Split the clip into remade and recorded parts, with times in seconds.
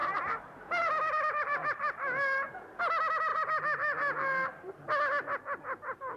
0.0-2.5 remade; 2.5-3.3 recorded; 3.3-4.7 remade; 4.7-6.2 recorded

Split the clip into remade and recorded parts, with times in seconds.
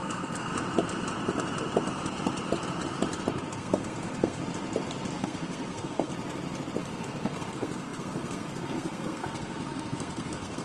0.0-0.5 remade; 0.5-3.5 recorded; 3.5-4.4 remade; 4.4-5.2 recorded; 5.2-6.1 remade; 6.1-6.8 recorded; 6.8-10.6 remade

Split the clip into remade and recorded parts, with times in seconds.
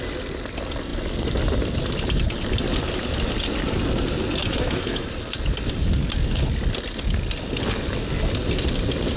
0.0-4.4 recorded; 4.4-5.1 remade; 5.1-9.2 recorded